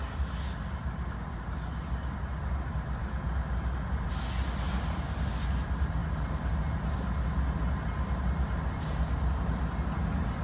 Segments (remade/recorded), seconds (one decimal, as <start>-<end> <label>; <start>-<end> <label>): 0.0-10.4 recorded